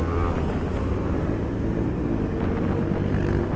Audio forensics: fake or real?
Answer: real